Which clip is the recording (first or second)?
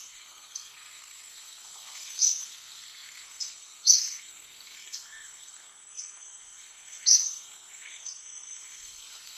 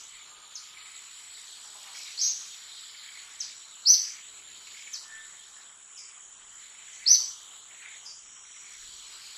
second